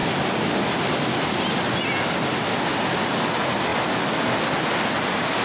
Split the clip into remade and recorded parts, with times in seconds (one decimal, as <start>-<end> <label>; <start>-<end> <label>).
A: 0.0-5.4 recorded